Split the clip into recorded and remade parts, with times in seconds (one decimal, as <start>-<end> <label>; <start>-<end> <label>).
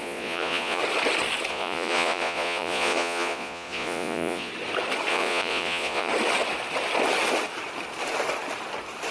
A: 0.0-0.8 remade; 0.8-1.5 recorded; 1.5-4.5 remade; 4.5-5.1 recorded; 5.1-6.1 remade; 6.1-9.1 recorded